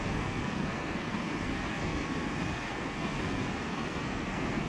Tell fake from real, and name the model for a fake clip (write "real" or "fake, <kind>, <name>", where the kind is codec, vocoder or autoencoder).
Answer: fake, codec, SNAC